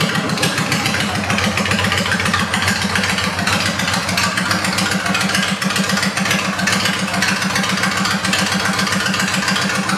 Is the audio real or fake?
real